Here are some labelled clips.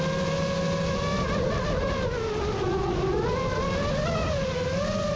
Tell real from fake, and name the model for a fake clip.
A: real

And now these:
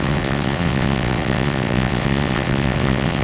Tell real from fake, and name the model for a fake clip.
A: fake, vocoder, WaveNeXt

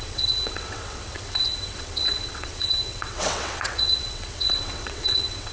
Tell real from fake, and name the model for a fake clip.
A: fake, vocoder, WaveNeXt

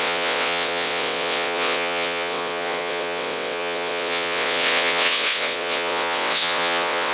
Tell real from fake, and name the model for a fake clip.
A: fake, vocoder, WaveNeXt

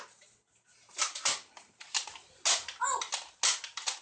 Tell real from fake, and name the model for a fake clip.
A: real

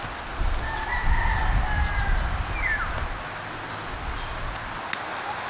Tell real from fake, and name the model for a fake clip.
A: real